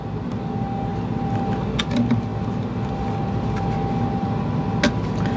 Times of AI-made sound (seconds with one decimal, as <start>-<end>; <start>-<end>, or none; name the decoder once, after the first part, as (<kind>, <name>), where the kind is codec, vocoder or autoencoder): none